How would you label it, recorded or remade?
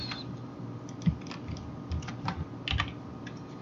recorded